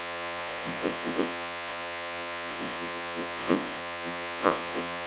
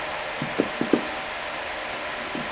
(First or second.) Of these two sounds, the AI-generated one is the first